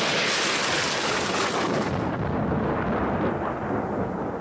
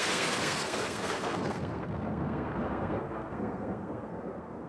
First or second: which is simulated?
second